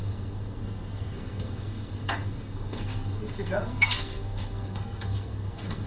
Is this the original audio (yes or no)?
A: no